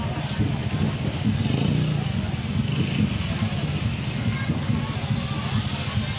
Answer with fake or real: real